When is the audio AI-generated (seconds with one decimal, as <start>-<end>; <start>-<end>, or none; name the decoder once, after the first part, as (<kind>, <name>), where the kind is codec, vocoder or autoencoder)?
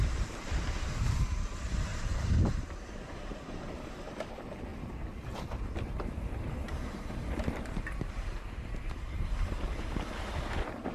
0.0-4.7 (vocoder, BigVGAN v2); 6.3-10.9